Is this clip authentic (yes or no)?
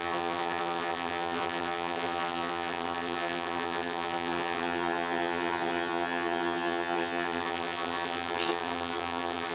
no